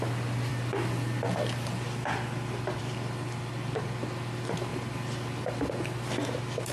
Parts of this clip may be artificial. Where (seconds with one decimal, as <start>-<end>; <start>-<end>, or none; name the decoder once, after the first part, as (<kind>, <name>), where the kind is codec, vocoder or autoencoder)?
none

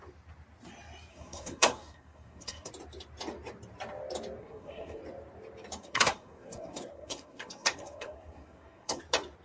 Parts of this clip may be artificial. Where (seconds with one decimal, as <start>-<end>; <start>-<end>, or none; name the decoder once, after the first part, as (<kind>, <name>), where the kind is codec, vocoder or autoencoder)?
1.1-2.7 (codec, SNAC); 4.4-5.0; 5.8-9.0

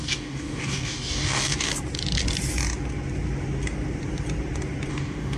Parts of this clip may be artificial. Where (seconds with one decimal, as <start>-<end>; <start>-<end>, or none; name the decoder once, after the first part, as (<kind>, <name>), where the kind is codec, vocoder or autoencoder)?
0.0-1.7 (codec, DAC); 4.9-5.4

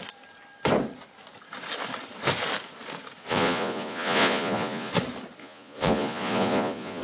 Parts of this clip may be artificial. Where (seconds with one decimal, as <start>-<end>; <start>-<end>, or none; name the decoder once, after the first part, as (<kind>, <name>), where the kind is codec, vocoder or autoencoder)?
3.2-4.9 (vocoder, Vocos); 5.4-7.0

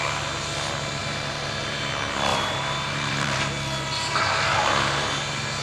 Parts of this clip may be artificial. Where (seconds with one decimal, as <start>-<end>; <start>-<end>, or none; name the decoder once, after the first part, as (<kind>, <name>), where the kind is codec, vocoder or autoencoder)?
1.0-1.9 (vocoder, BigVGAN v2); 2.3-3.4

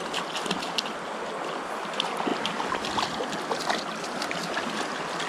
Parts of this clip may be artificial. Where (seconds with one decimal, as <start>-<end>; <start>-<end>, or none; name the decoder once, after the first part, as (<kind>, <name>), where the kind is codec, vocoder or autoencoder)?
none

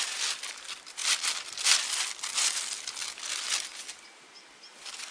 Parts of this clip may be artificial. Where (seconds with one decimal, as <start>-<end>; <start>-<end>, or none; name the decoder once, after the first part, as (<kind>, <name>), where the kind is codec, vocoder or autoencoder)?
none

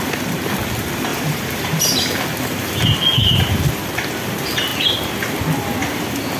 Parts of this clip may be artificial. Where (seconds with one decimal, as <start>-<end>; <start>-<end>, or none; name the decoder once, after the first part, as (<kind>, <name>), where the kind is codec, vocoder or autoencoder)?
1.1-1.8 (vocoder, BigVGAN v2); 3.2-3.7